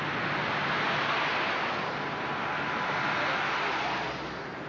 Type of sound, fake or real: real